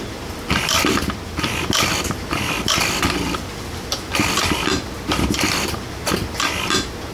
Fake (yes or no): yes